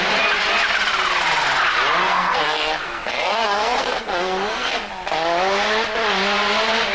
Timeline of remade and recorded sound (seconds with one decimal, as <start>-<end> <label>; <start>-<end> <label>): 0.0-2.0 recorded; 2.0-4.9 remade; 4.9-6.9 recorded